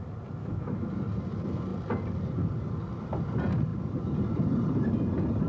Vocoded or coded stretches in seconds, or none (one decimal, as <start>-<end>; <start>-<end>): 0.4-0.9